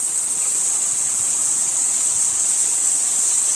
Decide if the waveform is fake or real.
fake